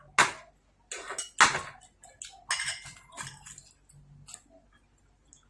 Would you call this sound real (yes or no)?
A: yes